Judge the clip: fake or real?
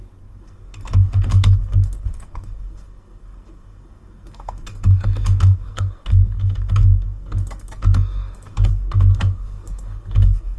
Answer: fake